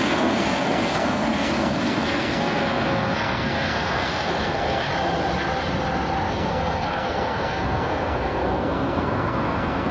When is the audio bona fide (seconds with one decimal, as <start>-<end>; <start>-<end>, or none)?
4.9-6.3